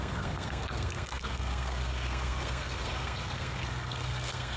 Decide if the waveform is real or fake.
fake